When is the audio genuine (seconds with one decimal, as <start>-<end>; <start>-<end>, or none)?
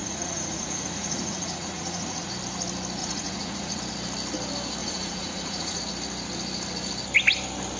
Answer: 2.3-3.0; 3.8-4.8; 5.8-7.8